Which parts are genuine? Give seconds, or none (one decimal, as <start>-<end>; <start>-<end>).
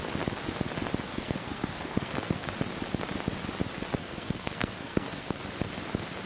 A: 0.0-1.1; 2.5-4.0; 5.4-6.3